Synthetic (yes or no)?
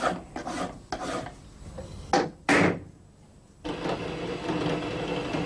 no